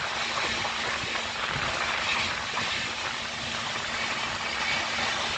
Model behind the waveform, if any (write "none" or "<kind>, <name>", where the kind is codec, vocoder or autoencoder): none